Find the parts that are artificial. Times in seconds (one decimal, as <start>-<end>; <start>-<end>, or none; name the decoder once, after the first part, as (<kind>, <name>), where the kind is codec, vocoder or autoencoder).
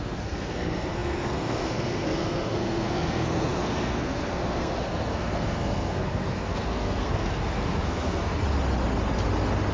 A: 0.0-8.4 (codec, SNAC)